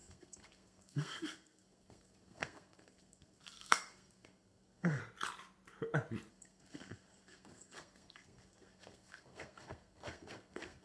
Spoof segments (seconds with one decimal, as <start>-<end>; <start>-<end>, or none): 0.0-5.0; 6.3-10.8